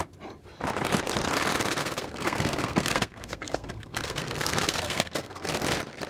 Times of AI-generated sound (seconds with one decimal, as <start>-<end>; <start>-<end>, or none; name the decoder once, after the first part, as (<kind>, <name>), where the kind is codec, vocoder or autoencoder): 1.8-5.5 (codec, SNAC)